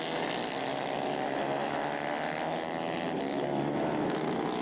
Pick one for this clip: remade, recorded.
recorded